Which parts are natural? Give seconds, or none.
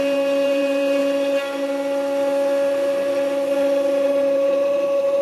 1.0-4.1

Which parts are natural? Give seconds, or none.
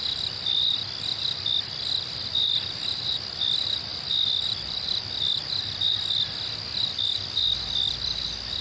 0.0-3.9; 5.0-8.6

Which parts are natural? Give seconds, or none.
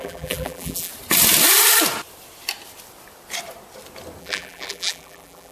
0.9-4.2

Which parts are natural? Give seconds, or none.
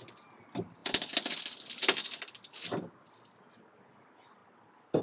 0.0-5.0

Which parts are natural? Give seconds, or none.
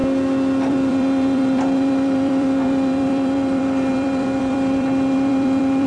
0.0-0.7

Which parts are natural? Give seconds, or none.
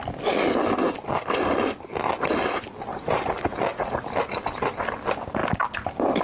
0.0-2.9; 3.5-5.4